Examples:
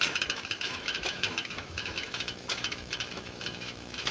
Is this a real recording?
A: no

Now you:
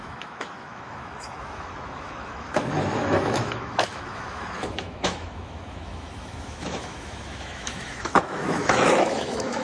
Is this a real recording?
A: no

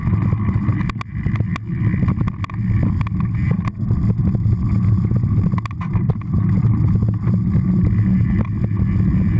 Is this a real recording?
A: yes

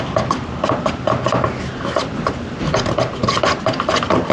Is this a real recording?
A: yes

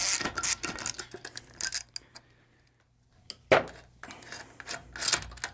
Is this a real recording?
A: yes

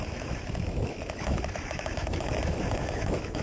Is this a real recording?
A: no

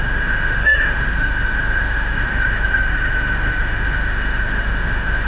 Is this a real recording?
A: no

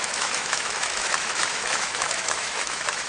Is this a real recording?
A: no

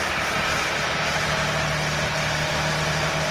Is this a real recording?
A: yes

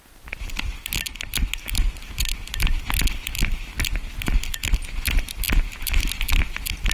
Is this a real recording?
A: yes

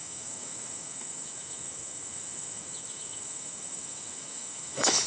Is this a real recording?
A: no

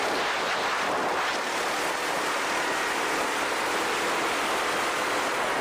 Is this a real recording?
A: yes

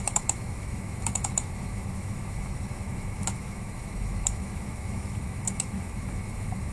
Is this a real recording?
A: no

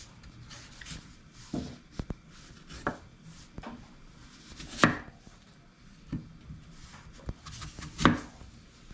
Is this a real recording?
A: yes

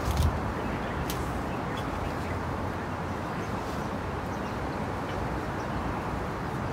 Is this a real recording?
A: yes